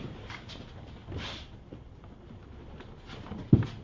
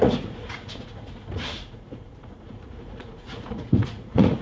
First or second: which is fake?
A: second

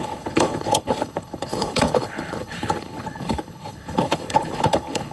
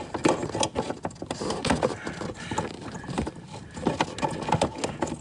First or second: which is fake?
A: first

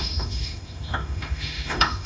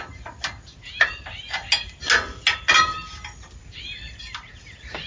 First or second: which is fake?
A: first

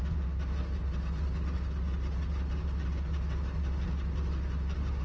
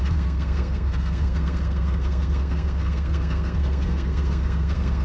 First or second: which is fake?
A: second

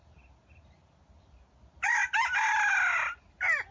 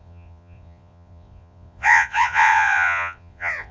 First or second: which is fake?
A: second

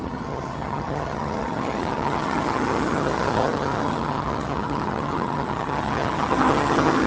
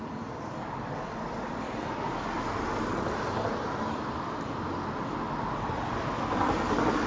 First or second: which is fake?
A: first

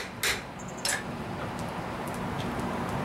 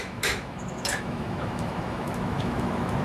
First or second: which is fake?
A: second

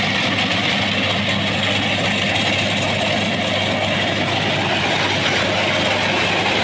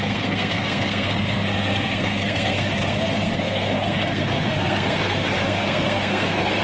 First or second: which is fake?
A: second